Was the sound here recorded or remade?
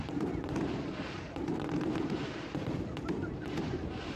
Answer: remade